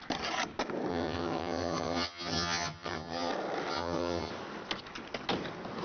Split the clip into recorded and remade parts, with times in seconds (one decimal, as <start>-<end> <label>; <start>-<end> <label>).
0.0-0.9 recorded; 0.9-3.3 remade; 3.3-3.7 recorded; 3.7-4.3 remade; 4.3-5.8 recorded